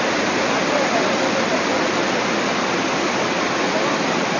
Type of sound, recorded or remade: recorded